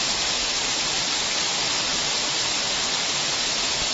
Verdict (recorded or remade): recorded